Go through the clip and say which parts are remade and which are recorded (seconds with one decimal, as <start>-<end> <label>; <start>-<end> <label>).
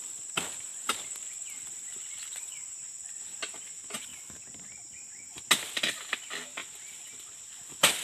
0.0-8.0 recorded